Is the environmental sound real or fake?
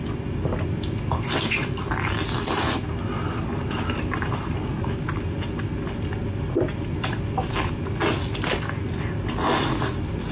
real